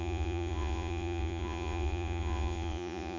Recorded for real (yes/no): no